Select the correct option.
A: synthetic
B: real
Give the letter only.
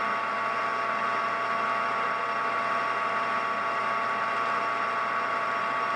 B